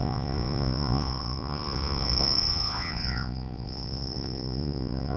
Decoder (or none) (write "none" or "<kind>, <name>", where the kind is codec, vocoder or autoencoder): vocoder, Vocos